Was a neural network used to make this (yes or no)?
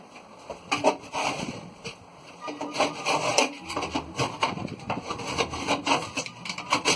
yes